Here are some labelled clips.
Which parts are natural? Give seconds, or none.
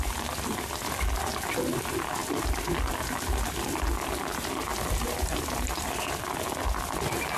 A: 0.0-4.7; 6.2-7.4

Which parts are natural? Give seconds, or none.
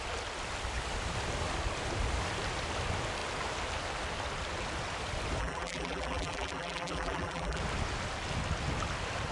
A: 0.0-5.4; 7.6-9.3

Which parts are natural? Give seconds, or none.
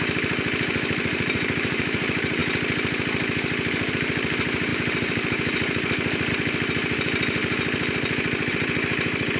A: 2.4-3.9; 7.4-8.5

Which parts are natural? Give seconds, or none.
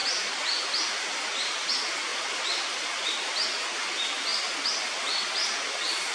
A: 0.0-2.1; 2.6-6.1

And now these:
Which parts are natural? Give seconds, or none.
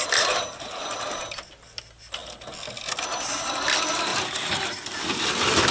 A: 0.0-5.7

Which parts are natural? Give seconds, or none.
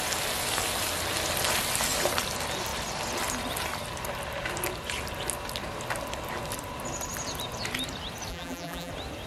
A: 0.0-8.3; 8.9-9.3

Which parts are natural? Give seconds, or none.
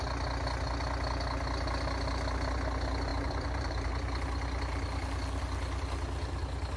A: 0.0-3.1; 3.9-6.8